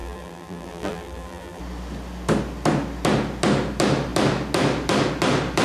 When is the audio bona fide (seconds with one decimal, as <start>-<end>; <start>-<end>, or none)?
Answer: 1.6-5.6